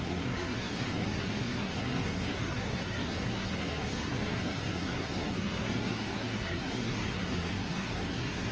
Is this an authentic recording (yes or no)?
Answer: no